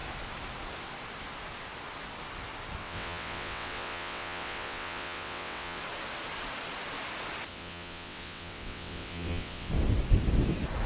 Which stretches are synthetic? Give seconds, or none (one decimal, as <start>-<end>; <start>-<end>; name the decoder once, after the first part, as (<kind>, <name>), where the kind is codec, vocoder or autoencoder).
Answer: 2.8-5.8 (vocoder, WaveNeXt); 7.5-9.7